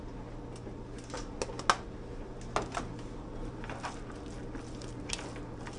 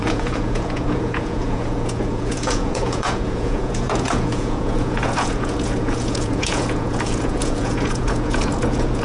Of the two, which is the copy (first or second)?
second